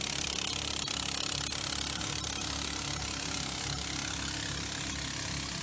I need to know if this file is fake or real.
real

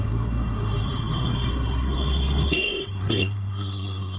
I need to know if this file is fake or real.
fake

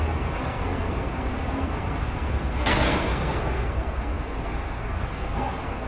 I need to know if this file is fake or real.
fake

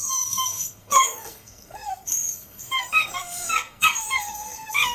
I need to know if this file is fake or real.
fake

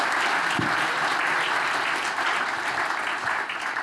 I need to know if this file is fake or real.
real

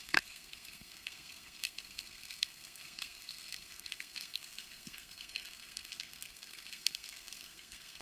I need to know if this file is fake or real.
fake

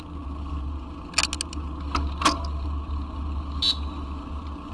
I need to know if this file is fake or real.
real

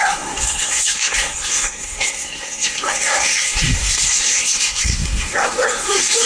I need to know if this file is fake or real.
fake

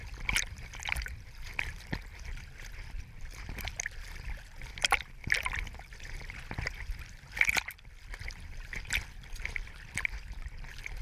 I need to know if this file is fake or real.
real